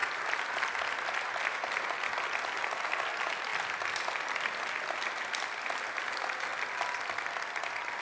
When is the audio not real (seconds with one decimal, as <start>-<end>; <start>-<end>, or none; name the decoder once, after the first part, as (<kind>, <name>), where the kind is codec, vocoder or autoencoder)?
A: 0.0-0.8 (vocoder, BigVGAN v2); 3.5-5.2; 6.5-8.0